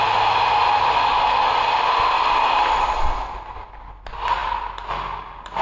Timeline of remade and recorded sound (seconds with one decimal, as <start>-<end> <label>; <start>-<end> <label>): 0.0-5.6 recorded